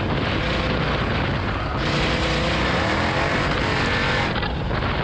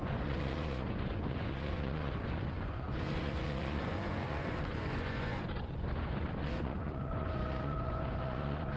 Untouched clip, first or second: first